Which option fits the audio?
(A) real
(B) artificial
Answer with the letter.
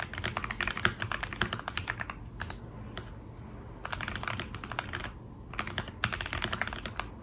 A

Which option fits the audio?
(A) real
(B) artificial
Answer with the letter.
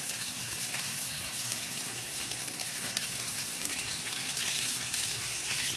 B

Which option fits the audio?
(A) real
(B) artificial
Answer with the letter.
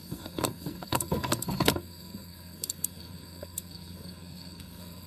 B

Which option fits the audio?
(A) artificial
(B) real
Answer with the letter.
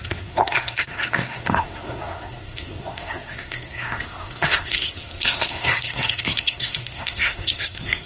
A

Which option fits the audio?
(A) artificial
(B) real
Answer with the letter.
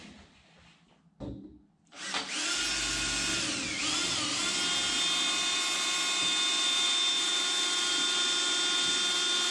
B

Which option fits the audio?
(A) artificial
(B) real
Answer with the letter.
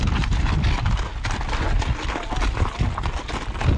B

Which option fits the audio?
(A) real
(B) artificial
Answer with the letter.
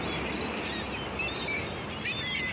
A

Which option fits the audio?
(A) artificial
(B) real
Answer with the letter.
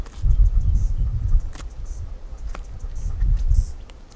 B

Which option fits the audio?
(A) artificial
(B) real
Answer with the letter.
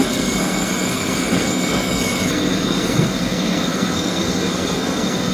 A